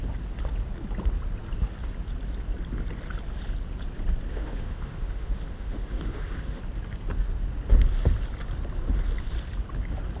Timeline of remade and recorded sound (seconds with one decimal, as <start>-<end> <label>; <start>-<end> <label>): 0.0-4.3 recorded; 4.3-6.6 remade; 6.6-10.2 recorded

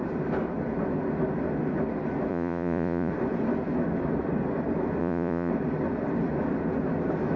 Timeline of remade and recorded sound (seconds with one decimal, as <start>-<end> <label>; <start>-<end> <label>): 0.0-2.3 recorded; 2.3-3.1 remade; 3.1-5.0 recorded; 5.0-5.5 remade; 5.5-7.4 recorded

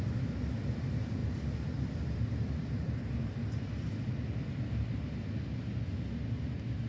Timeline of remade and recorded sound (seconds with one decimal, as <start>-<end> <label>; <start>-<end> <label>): 0.0-1.2 recorded; 1.2-2.8 remade; 2.8-6.9 recorded

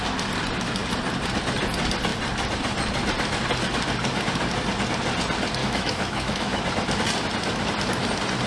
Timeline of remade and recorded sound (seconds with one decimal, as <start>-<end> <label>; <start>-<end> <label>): 0.0-5.6 recorded; 5.6-6.6 remade; 6.6-8.5 recorded

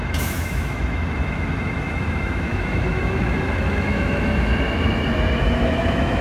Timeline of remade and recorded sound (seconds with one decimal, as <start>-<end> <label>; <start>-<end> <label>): 0.0-4.5 remade; 4.5-5.4 recorded; 5.4-6.2 remade

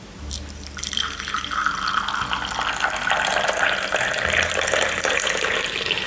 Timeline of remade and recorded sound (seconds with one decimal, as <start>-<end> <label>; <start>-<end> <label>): 0.0-1.6 remade; 1.6-3.1 recorded; 3.1-6.1 remade

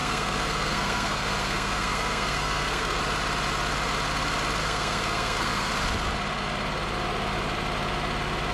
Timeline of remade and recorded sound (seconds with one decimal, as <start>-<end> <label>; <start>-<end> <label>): 0.0-3.0 remade; 3.0-4.6 recorded; 4.6-5.7 remade; 5.7-8.5 recorded

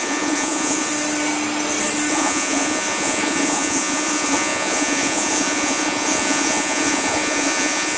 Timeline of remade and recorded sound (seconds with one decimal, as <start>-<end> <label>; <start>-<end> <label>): 0.0-0.9 remade; 0.9-2.1 recorded; 2.1-8.0 remade